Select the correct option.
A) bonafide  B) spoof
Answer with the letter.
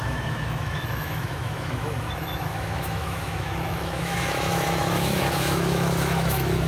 B